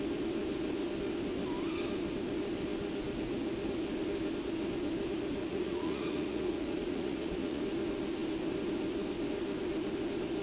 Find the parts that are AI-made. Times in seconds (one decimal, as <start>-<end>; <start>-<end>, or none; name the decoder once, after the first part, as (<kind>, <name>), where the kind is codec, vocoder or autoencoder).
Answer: 5.4-7.6 (vocoder, Vocos)